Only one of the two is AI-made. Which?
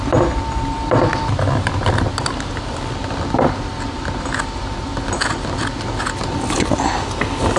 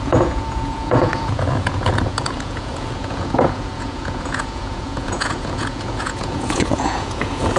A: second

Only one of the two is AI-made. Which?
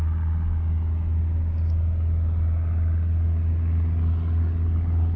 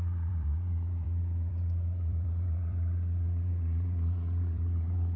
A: second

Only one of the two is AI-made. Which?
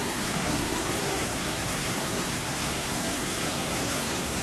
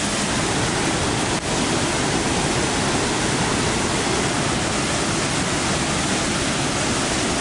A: first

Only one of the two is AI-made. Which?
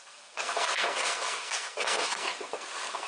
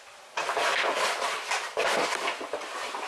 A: first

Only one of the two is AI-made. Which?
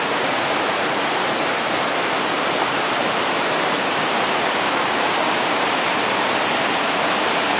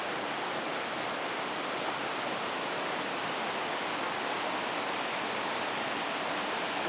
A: first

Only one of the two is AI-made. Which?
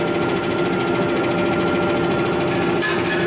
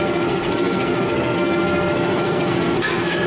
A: second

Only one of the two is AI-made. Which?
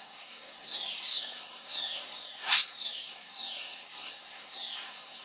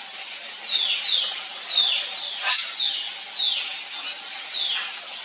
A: first